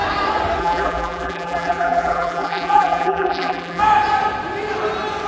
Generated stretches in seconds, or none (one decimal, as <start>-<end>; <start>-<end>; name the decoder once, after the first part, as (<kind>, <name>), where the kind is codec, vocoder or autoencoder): 0.6-3.8 (vocoder, BigVGAN v2)